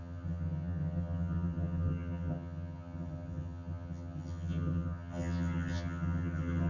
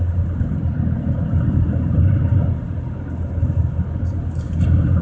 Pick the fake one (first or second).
first